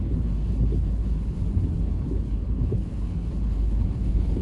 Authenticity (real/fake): fake